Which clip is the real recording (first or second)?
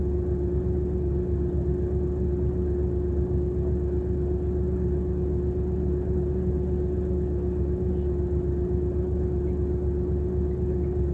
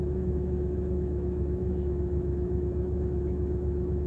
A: first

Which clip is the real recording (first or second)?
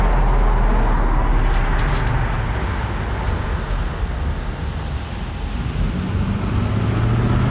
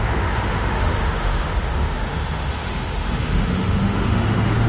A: first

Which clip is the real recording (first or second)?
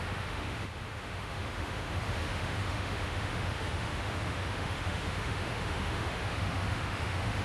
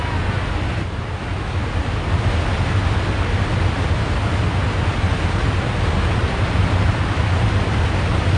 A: second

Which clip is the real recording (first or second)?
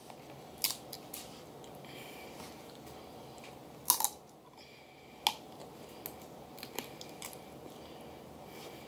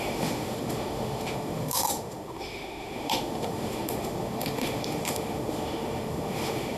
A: first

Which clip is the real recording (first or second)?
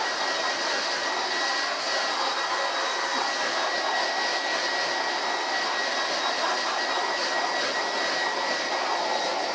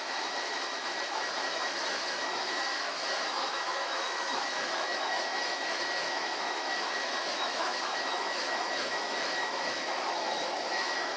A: first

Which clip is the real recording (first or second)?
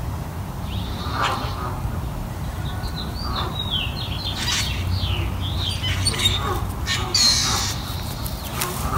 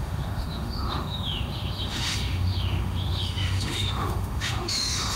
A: first